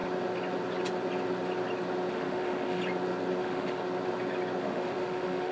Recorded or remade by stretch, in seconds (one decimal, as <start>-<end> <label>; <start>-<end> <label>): 0.0-2.1 recorded; 2.1-2.8 remade; 2.8-3.4 recorded; 3.4-3.8 remade; 3.8-4.6 recorded; 4.6-5.5 remade